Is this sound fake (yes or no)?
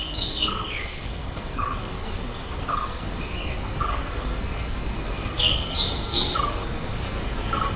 yes